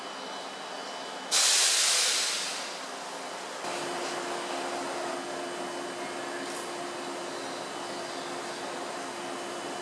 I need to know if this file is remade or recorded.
recorded